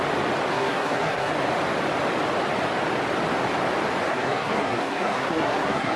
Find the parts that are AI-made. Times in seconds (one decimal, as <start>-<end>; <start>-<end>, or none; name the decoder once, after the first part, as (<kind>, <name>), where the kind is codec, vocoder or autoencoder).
0.5-1.3 (codec, SNAC); 4.1-6.0